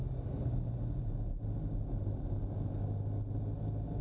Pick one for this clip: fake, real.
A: real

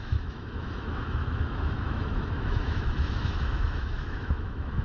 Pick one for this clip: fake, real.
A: fake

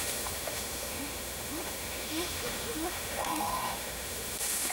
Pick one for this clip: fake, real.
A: fake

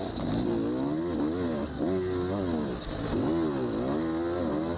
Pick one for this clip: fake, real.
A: real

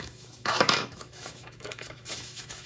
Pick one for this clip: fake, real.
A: fake